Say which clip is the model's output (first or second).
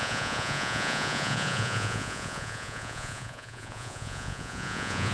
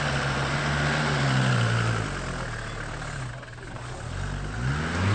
first